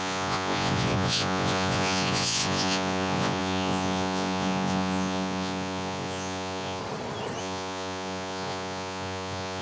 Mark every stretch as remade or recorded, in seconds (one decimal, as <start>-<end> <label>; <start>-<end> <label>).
0.0-6.8 remade; 6.8-7.4 recorded; 7.4-9.6 remade